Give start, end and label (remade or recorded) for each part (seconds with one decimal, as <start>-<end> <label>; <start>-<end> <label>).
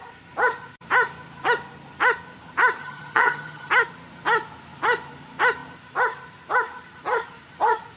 0.0-2.8 recorded; 2.8-3.7 remade; 3.7-8.0 recorded